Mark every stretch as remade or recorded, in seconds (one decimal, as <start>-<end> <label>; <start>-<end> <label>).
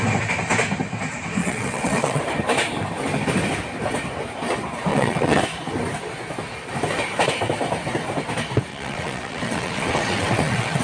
0.0-1.4 recorded; 1.4-2.2 remade; 2.2-4.9 recorded; 4.9-5.4 remade; 5.4-8.7 recorded; 8.7-10.8 remade